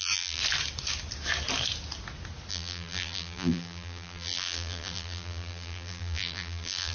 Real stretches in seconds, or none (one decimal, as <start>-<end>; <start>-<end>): 0.4-2.5